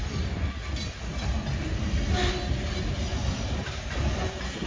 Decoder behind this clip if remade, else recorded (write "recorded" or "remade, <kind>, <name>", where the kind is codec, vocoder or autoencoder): recorded